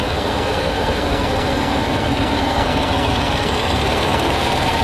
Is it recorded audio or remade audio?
remade